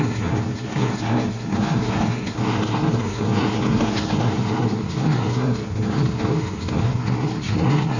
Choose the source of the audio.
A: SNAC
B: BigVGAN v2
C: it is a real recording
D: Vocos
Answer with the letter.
A